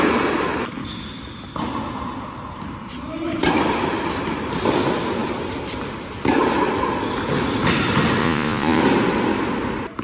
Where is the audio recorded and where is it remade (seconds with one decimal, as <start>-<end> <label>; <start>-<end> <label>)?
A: 0.0-8.2 recorded; 8.2-8.8 remade; 8.8-10.0 recorded